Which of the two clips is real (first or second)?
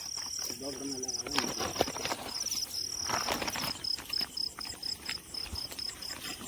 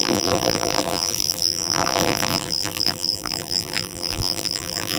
first